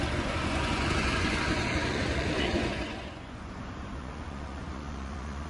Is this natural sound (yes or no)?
no